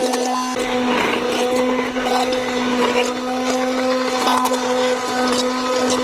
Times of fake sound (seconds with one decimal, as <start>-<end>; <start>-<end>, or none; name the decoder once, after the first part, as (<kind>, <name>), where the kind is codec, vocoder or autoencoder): none